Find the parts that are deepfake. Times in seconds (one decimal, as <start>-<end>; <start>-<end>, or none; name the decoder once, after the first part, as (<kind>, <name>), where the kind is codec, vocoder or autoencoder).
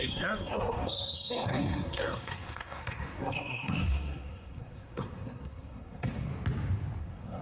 0.0-6.3 (codec, SNAC); 7.0-7.4